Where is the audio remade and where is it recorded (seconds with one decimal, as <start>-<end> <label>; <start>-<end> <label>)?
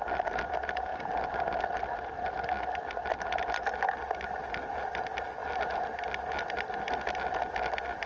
0.0-8.1 recorded